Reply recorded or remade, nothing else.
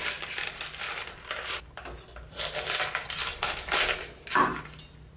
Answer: recorded